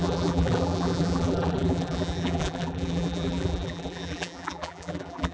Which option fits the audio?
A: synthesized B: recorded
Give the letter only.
A